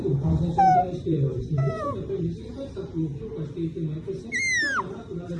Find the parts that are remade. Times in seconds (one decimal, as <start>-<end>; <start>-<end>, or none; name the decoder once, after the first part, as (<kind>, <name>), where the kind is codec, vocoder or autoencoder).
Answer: 0.0-3.1 (vocoder, BigVGAN v2); 4.9-5.4